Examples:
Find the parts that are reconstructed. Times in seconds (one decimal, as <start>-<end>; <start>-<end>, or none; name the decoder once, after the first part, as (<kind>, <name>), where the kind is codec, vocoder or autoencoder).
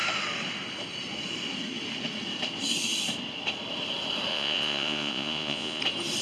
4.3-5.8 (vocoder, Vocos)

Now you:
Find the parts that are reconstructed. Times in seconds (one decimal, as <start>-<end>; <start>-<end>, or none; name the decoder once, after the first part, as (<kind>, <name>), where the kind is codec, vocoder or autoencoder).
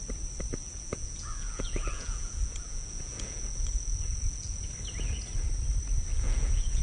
0.6-4.7 (vocoder, Vocos); 6.1-6.8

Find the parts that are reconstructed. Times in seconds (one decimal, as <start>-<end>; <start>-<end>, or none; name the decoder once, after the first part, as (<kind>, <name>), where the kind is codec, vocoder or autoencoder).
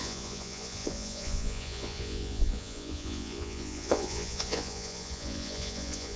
0.0-6.2 (vocoder, Vocos)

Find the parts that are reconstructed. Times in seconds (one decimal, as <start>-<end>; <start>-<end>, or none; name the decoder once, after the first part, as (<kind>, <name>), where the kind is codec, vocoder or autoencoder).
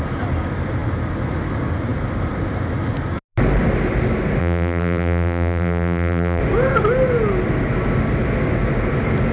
4.4-6.4 (vocoder, BigVGAN v2)